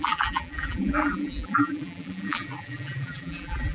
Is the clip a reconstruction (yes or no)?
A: yes